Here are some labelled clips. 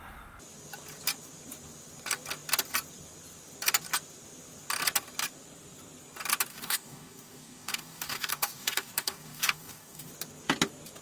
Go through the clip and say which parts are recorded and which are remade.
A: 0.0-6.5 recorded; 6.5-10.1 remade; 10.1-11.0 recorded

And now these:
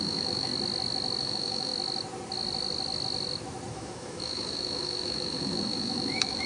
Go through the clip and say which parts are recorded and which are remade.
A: 0.0-0.5 remade; 0.5-1.2 recorded; 1.2-1.7 remade; 1.7-3.7 recorded; 3.7-6.5 remade